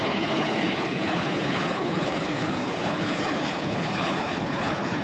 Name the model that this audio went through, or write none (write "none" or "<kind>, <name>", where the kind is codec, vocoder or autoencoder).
codec, HILCodec